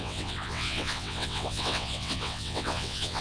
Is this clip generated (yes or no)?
yes